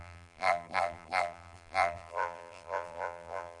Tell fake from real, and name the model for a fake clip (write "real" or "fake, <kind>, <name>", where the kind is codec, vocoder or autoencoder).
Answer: fake, vocoder, BigVGAN v2